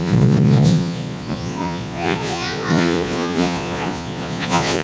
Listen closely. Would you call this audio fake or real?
fake